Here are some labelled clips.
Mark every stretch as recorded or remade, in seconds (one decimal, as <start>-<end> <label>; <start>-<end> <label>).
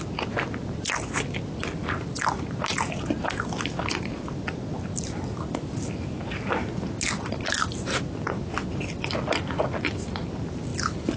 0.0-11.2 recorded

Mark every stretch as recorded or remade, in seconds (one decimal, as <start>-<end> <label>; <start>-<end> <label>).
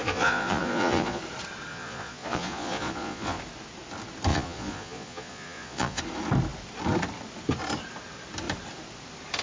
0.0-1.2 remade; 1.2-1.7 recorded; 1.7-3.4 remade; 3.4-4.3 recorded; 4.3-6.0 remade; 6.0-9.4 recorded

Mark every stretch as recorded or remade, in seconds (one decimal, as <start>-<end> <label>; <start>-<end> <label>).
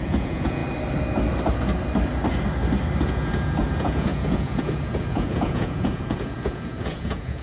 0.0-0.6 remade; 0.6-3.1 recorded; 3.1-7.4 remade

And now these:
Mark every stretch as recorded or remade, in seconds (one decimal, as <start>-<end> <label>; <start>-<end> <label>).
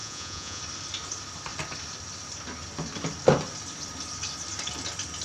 0.0-0.6 remade; 0.6-5.2 recorded